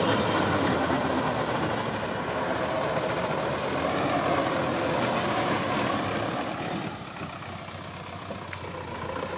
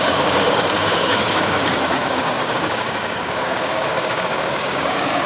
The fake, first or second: second